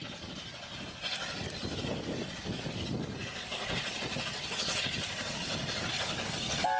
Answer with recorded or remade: recorded